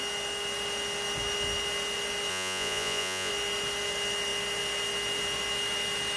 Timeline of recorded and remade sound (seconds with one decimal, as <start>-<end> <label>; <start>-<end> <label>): 0.0-2.3 recorded; 2.3-3.3 remade; 3.3-6.2 recorded